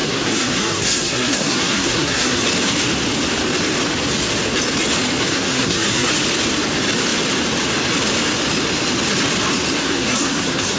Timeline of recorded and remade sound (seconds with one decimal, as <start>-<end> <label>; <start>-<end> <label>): 0.0-2.4 remade; 2.4-5.2 recorded; 5.2-6.1 remade; 6.1-9.8 recorded; 9.8-10.8 remade